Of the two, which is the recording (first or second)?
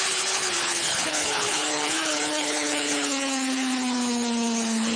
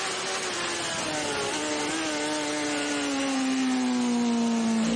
second